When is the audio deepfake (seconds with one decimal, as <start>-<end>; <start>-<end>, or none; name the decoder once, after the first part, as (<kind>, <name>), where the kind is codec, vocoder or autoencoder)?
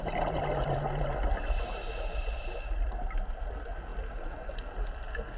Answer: none